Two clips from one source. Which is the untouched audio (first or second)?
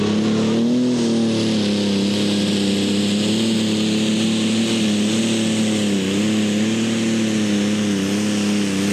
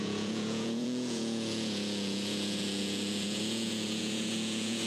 first